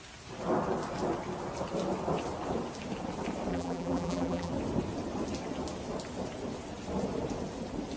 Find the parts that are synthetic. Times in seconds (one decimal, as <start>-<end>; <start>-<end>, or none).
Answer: 3.5-4.5